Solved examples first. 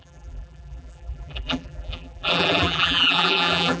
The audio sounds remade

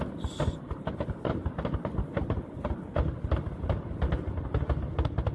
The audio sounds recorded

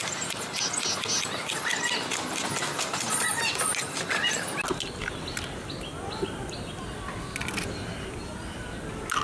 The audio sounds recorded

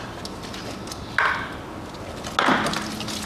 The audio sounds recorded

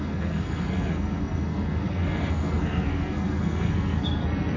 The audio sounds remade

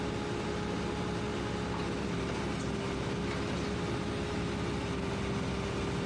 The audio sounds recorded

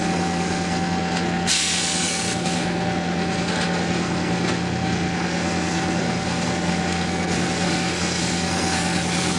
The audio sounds remade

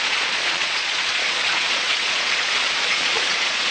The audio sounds remade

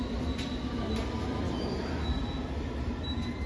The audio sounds recorded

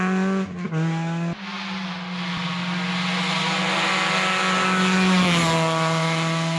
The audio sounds recorded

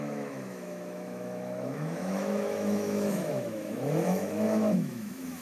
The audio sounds remade